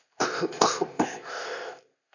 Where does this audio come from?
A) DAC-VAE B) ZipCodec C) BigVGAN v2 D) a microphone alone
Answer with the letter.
B